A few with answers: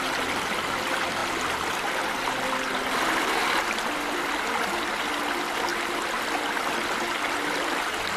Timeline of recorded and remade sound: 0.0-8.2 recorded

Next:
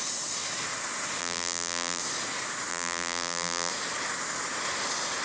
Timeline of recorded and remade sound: 0.0-1.2 recorded; 1.2-2.0 remade; 2.0-2.7 recorded; 2.7-3.7 remade; 3.7-5.2 recorded

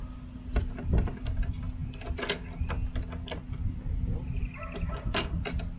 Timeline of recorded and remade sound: 0.0-5.8 recorded

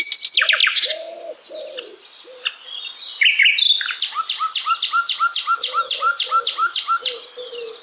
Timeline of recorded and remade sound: 0.0-3.4 recorded; 3.4-6.4 remade; 6.4-7.8 recorded